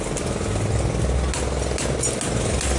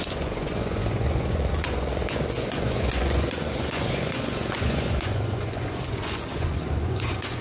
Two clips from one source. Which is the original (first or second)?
first